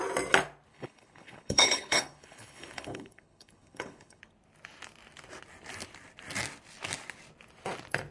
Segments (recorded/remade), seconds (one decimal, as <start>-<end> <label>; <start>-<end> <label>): 0.0-0.7 recorded; 0.7-4.2 remade; 4.2-8.1 recorded